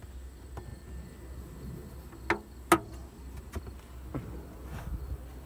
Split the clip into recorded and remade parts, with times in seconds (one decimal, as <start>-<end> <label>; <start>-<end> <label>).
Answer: 0.0-5.5 recorded